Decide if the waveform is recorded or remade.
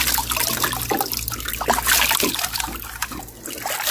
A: recorded